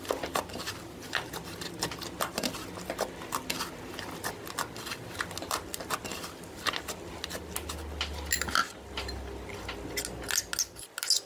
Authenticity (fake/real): real